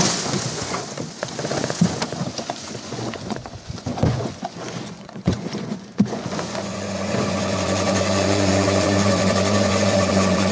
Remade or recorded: remade